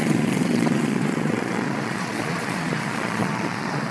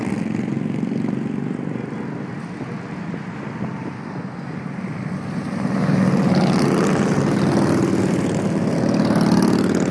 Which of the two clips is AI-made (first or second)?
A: first